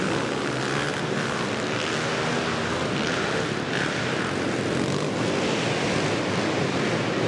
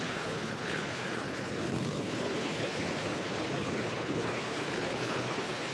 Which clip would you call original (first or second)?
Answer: first